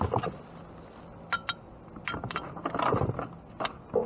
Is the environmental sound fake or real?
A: real